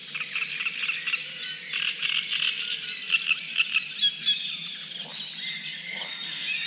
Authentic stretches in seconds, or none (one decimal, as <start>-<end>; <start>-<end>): 0.0-6.7